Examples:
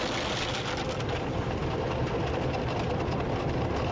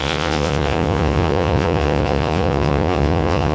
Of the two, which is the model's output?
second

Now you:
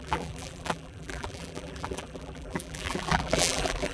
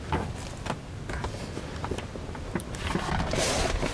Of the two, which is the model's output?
first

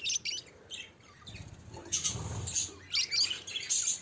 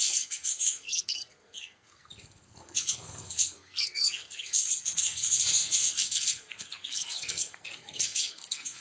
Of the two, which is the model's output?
second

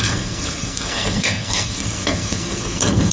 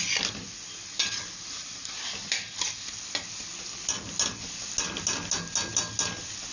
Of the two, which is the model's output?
first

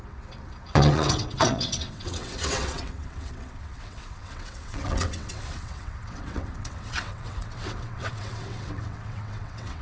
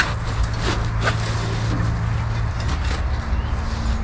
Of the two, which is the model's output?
first